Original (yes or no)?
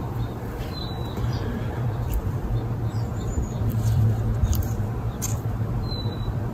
no